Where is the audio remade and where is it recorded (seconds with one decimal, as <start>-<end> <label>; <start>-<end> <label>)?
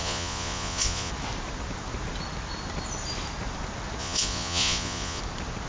0.0-1.1 remade; 1.1-4.0 recorded; 4.0-5.2 remade; 5.2-5.7 recorded